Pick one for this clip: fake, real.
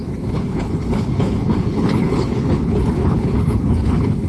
fake